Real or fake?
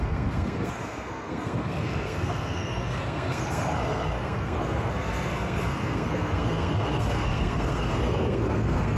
fake